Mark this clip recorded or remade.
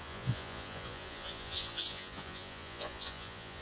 remade